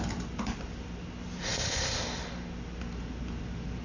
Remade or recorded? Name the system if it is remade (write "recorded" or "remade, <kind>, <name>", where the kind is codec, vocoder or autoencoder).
recorded